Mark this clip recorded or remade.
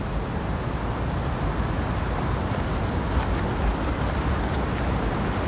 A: recorded